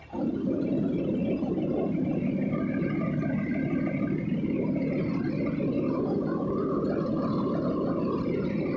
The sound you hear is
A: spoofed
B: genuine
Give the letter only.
B